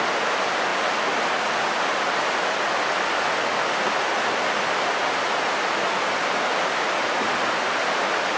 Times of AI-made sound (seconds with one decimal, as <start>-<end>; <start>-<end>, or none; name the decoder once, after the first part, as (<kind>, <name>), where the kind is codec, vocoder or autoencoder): none